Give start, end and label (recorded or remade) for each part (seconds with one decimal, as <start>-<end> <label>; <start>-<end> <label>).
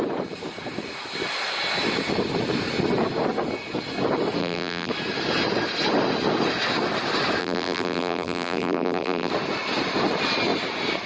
0.0-4.4 recorded; 4.4-4.9 remade; 4.9-7.4 recorded; 7.4-9.3 remade; 9.3-11.1 recorded